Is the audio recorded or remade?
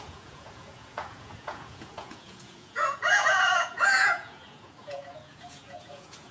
remade